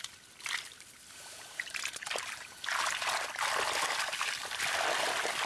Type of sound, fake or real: fake